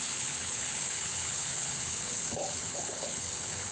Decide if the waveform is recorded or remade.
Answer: remade